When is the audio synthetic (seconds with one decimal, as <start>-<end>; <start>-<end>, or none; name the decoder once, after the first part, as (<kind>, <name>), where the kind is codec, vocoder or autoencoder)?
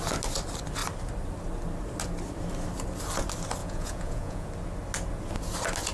3.6-4.5 (vocoder, Vocos)